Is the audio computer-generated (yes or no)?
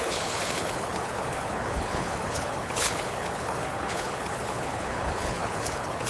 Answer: yes